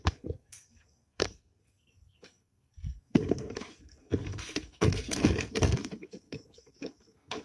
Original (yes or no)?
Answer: no